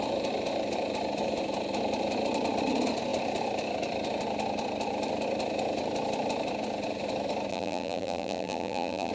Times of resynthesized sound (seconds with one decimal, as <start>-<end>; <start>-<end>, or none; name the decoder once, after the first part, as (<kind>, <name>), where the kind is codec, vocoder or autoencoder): 7.5-9.1 (vocoder, BigVGAN v2)